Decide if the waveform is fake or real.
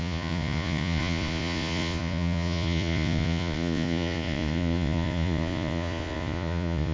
fake